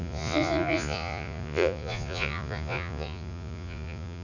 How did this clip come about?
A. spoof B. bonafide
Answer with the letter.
A